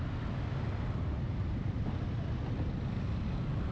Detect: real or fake real